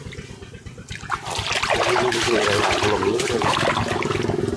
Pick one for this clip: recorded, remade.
remade